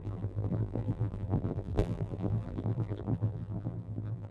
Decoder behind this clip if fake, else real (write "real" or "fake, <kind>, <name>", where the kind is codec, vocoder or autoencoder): fake, vocoder, BigVGAN v2